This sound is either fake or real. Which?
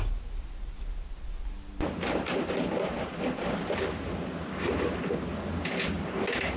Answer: real